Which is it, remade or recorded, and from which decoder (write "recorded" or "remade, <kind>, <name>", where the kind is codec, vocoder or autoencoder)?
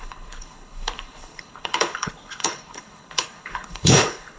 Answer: remade, codec, HILCodec